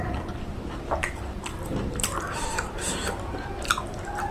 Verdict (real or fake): fake